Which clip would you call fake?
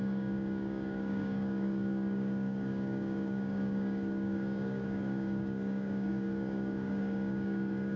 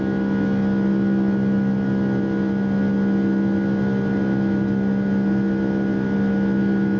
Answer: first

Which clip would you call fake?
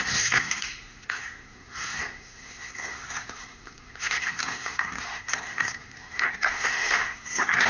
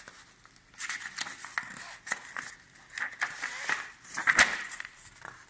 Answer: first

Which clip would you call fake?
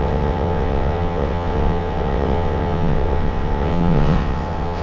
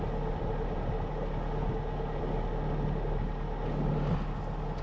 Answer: first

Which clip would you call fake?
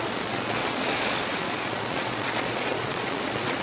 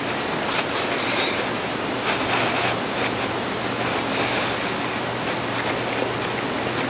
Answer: first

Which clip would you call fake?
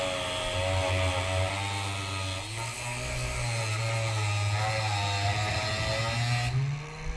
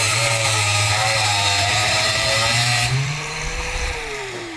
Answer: second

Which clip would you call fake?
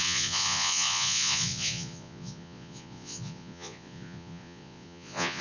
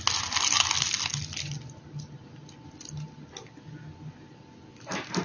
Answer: first